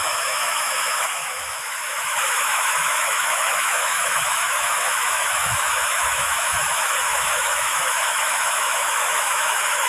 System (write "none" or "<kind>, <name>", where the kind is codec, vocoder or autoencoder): autoencoder, DAC-VAE